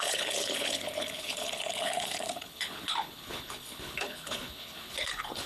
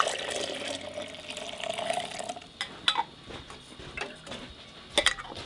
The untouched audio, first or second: second